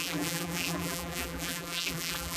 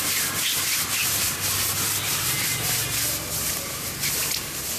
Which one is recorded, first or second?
second